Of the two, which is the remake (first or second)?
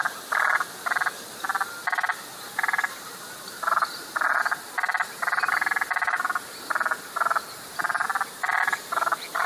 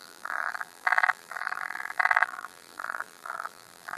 second